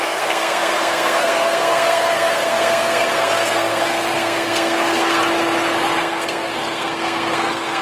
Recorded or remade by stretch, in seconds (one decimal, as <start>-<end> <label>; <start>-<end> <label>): 0.0-5.2 remade; 5.2-6.0 recorded; 6.0-7.8 remade